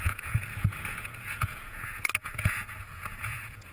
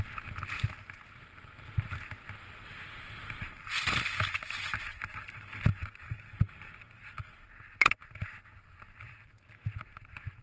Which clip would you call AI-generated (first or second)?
first